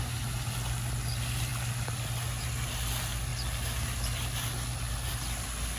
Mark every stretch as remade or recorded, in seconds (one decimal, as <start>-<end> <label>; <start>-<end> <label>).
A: 0.0-5.8 recorded